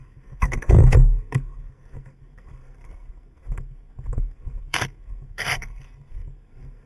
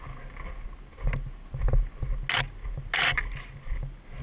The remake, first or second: first